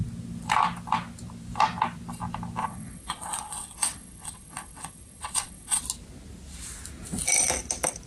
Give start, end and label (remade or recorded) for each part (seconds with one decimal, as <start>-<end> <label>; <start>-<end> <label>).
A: 0.0-2.6 recorded; 2.6-5.8 remade; 5.8-8.1 recorded